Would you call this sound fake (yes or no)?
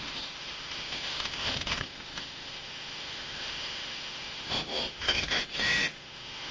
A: yes